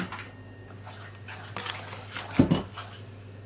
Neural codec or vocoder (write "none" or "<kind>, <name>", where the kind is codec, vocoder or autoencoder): none